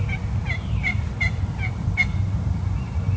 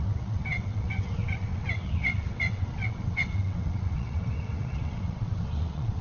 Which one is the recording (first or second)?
first